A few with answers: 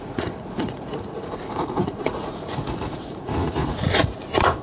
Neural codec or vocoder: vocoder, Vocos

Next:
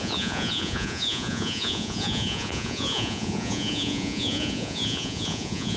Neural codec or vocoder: vocoder, Vocos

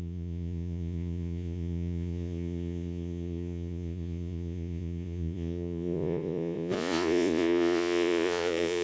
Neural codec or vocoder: vocoder, Vocos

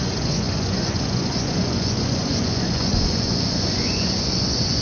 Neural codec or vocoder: vocoder, Vocos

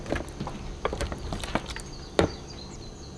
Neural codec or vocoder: none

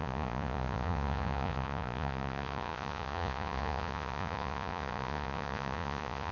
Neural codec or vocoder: vocoder, Vocos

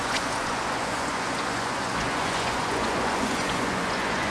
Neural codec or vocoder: vocoder, Vocos